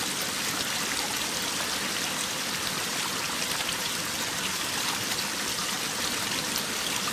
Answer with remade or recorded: recorded